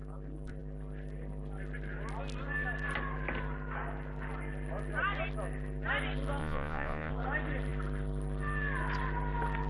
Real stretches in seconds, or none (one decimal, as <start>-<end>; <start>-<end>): 0.0-6.4; 7.1-9.7